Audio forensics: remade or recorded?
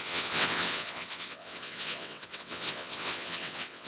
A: remade